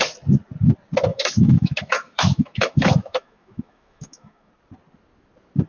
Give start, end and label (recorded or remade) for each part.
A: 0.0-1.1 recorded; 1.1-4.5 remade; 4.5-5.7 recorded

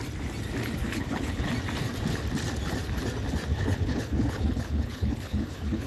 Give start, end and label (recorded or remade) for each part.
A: 0.0-0.8 recorded; 0.8-1.5 remade; 1.5-3.5 recorded; 3.5-5.9 remade